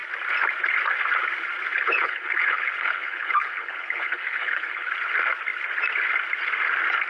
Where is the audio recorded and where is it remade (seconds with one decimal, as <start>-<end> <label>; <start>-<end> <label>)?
0.0-1.7 recorded; 1.7-4.9 remade; 4.9-7.1 recorded